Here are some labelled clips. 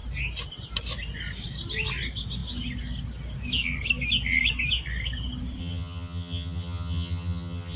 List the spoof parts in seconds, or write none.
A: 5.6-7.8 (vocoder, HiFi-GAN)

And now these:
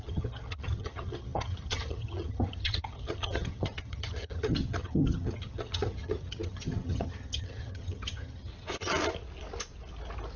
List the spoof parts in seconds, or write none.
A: 0.0-8.5 (vocoder, HiFi-GAN)

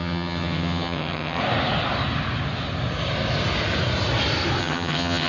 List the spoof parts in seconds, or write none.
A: 0.0-1.4 (vocoder, HiFi-GAN); 4.6-5.3

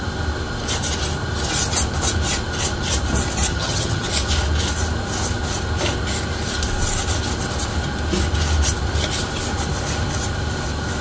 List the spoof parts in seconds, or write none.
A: 3.5-4.1 (vocoder, HiFi-GAN)